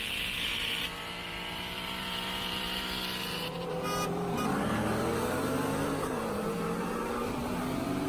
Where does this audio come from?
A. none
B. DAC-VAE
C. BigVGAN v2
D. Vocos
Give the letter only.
C